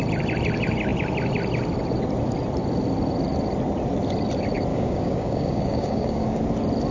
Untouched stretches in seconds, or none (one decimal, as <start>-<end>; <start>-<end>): 0.0-4.7; 6.4-6.9